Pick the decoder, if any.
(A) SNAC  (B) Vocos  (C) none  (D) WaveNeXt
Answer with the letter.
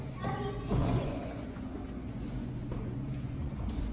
B